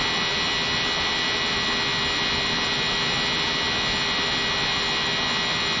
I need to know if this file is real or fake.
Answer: real